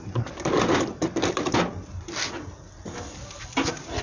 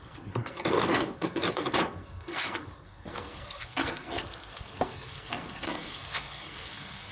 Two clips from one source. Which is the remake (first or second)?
second